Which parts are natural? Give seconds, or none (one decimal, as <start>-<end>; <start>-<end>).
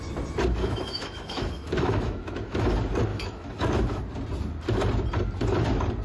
0.0-0.6; 2.7-3.1; 4.0-6.0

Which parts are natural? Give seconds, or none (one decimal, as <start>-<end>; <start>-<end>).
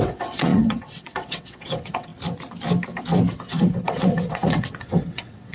2.1-3.3